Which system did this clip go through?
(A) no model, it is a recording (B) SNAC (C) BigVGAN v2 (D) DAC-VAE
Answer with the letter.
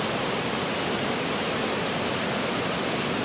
A